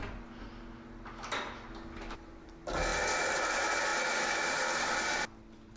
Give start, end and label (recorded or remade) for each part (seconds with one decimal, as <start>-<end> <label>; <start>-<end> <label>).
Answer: 0.0-5.8 recorded